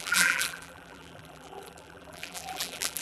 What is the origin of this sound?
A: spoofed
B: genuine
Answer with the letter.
A